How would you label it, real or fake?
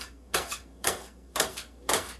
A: fake